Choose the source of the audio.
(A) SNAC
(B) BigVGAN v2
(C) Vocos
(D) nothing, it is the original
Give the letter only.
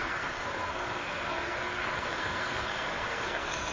A